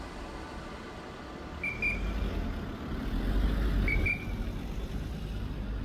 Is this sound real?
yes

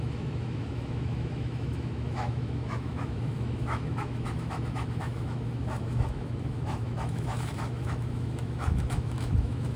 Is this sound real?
no